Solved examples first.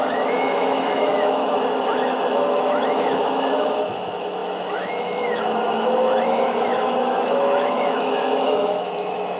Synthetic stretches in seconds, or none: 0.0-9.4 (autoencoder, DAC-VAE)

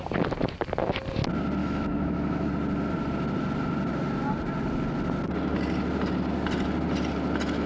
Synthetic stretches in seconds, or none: 1.6-2.5 (autoencoder, DAC-VAE)